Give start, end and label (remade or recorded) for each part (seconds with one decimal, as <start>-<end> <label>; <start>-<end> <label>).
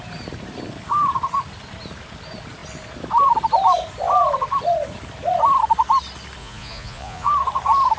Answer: 0.0-6.4 recorded; 6.4-7.3 remade; 7.3-8.0 recorded